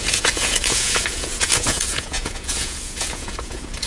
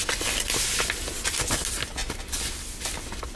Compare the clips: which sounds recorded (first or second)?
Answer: second